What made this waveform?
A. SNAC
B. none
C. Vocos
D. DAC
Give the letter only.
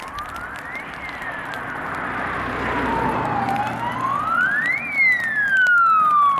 B